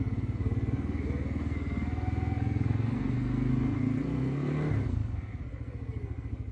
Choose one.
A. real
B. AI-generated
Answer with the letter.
B